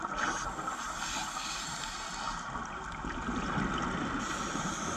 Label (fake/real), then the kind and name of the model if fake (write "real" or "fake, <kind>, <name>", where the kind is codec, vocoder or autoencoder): real